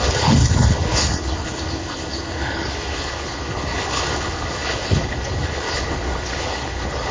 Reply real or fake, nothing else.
fake